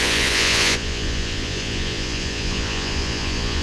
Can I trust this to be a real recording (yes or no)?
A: no